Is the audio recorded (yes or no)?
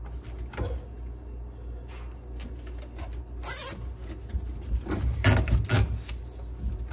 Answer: yes